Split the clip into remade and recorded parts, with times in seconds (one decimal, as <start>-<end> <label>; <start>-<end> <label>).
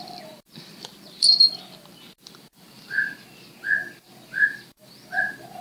0.0-3.0 remade; 3.0-4.5 recorded; 4.5-5.6 remade